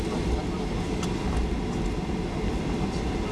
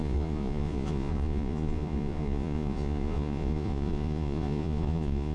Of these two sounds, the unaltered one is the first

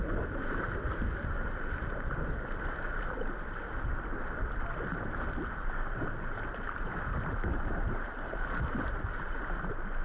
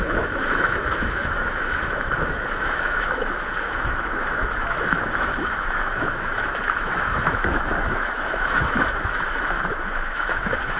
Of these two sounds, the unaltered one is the first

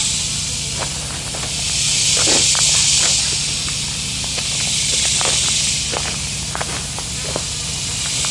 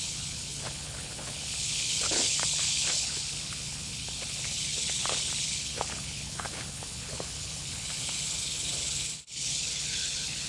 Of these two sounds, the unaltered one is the first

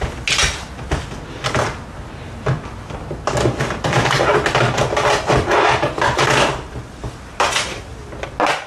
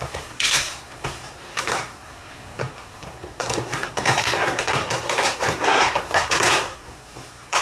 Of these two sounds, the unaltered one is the first